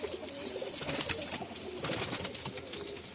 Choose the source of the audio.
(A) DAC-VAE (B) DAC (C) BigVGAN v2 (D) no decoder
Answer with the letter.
D